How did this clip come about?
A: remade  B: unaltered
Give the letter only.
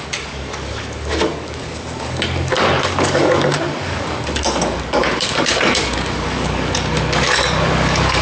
A